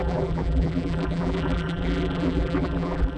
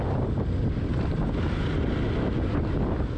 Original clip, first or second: second